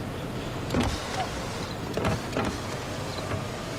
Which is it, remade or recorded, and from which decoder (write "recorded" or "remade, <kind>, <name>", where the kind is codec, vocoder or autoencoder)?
recorded